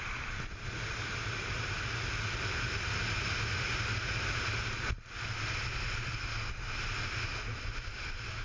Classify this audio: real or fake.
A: real